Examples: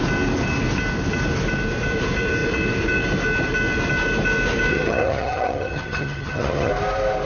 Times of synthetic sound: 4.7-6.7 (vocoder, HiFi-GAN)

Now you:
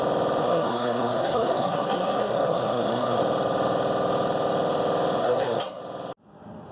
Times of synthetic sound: 0.4-3.2 (codec, SNAC); 5.2-5.8

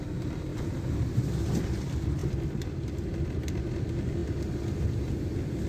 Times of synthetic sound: none

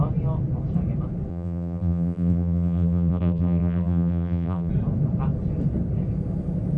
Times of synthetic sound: 1.3-4.7 (vocoder, BigVGAN v2)

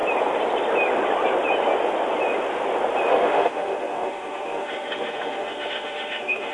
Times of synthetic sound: 3.1-6.5 (autoencoder, DAC-VAE)

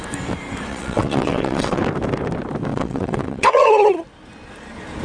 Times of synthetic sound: 0.7-1.8 (vocoder, WaveNeXt); 2.7-3.9

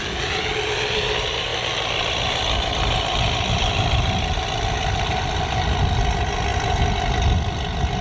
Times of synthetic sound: none

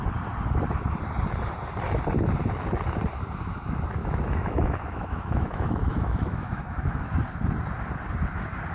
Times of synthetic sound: 4.0-7.1 (autoencoder, DAC-VAE)